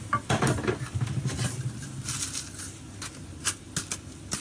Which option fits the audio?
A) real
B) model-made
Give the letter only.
A